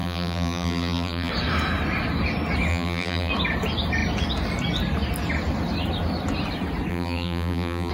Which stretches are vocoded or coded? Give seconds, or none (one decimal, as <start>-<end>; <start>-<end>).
0.0-1.3; 2.7-3.3; 6.9-7.9